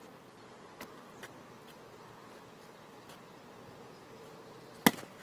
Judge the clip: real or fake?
real